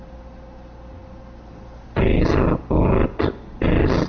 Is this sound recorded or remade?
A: recorded